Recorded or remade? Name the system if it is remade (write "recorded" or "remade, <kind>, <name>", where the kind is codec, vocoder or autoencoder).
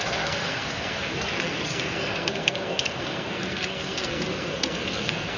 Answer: remade, codec, SNAC